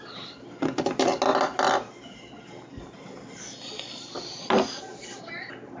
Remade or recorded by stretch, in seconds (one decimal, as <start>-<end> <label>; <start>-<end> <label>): 0.0-5.8 recorded